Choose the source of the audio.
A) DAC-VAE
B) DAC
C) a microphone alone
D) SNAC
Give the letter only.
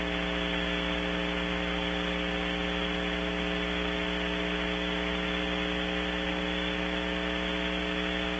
C